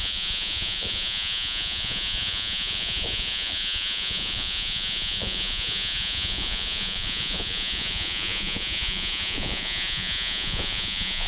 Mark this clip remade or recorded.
remade